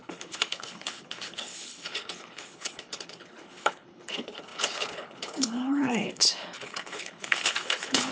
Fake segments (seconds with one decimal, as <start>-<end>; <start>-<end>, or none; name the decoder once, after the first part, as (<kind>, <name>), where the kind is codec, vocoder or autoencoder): 0.0-8.1 (codec, HILCodec)